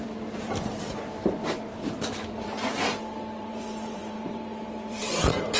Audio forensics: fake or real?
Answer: fake